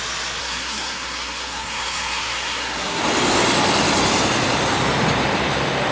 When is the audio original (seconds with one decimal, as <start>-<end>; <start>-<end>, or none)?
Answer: 0.0-0.4; 3.0-5.9

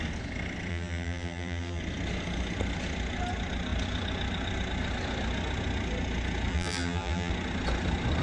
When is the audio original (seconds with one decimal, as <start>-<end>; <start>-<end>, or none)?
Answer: 0.0-0.7; 1.8-6.5; 7.3-8.2

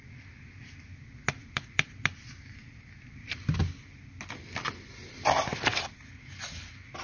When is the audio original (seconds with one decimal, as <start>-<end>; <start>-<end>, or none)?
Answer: 0.0-1.4; 3.6-7.0

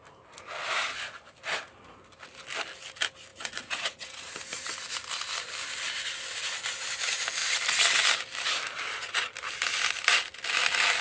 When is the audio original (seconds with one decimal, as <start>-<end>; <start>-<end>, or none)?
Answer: 0.0-3.3; 4.3-11.0

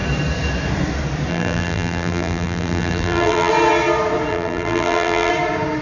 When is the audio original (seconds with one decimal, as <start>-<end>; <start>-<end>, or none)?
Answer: 0.0-1.3; 3.5-4.3; 5.3-5.8

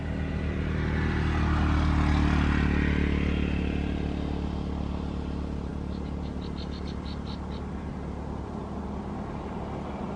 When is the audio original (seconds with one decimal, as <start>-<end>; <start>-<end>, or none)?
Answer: 0.0-10.2